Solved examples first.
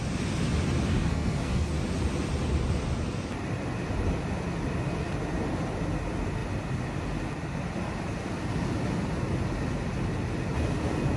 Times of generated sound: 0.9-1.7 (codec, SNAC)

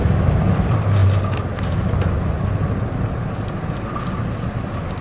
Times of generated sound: none

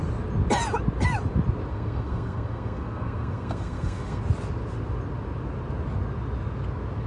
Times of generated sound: 1.7-4.2 (codec, SNAC)

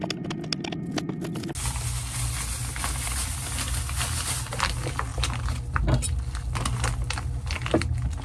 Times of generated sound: none

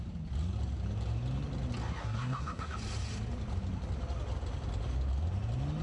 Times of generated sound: 2.0-2.7 (codec, SNAC)

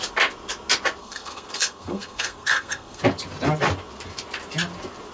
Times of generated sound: 1.0-3.0 (codec, SNAC)